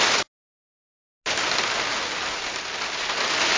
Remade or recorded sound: recorded